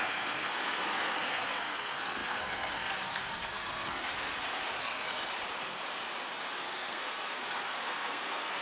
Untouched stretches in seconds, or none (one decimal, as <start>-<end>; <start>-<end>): 4.3-4.8; 5.3-6.6